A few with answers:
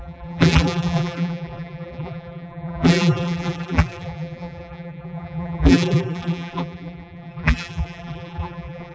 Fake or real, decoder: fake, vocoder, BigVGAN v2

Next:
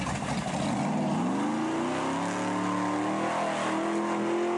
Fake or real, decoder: real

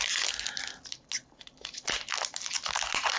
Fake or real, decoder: real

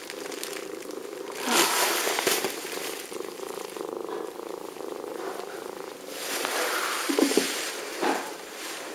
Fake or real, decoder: fake, vocoder, BigVGAN v2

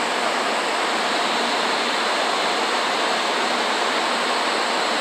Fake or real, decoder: fake, vocoder, BigVGAN v2